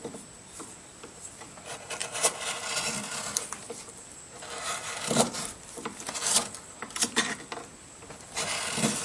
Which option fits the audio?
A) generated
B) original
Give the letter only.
A